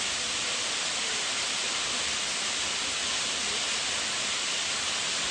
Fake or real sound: real